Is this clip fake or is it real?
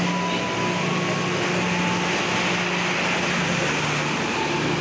real